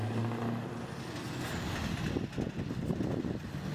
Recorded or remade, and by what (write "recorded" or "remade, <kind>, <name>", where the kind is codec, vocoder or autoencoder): recorded